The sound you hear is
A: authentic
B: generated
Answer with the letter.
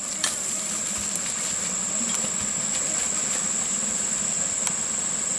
A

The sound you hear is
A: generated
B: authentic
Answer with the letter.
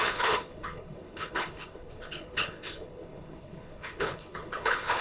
A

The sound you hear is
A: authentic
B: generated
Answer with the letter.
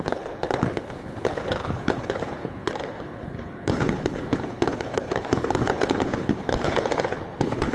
B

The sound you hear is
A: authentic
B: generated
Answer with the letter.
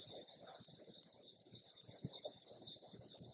A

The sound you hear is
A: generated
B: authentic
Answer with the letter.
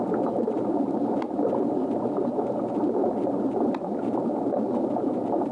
B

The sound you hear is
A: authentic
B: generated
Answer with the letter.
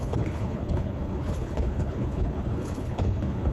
B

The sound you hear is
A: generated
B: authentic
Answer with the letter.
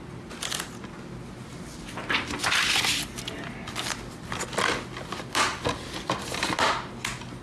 B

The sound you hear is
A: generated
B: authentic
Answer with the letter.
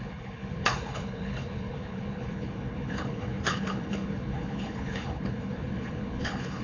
A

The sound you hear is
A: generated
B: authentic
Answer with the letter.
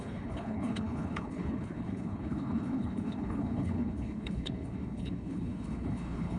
A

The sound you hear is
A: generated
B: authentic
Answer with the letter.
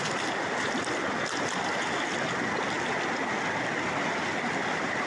B